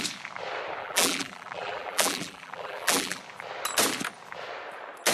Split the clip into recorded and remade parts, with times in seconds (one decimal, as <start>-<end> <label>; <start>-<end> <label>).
0.0-0.8 recorded; 0.8-3.2 remade; 3.2-5.1 recorded